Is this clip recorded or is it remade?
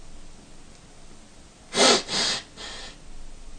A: recorded